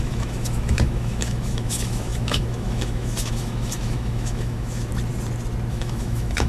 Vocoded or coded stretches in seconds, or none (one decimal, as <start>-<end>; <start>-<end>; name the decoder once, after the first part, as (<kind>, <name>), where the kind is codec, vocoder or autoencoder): 0.0-4.9 (autoencoder, DAC-VAE); 5.7-6.5